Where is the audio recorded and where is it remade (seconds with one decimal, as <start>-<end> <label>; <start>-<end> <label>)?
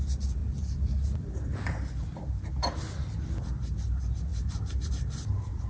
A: 0.0-5.7 recorded